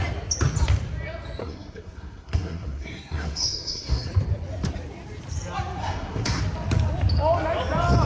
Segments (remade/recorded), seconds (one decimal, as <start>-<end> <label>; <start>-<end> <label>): 0.0-1.4 recorded; 1.4-4.1 remade; 4.1-5.8 recorded; 5.8-6.4 remade; 6.4-8.1 recorded